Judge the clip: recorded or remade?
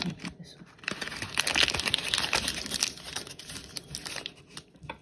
recorded